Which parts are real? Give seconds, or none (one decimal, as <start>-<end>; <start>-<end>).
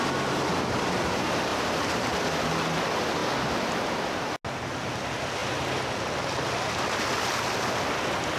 0.0-1.5; 2.2-8.4